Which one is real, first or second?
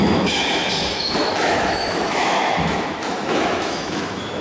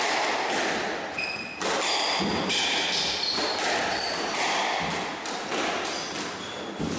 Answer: second